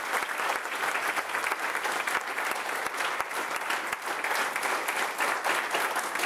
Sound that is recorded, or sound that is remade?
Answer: recorded